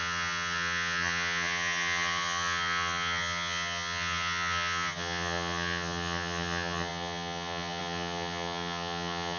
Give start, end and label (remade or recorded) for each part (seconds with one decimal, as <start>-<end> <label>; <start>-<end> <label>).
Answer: 0.0-9.4 remade